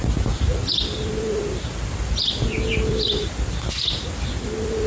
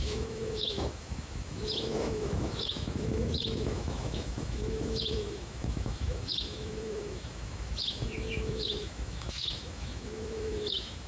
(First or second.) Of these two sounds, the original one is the first